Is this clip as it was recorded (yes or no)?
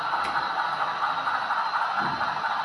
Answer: yes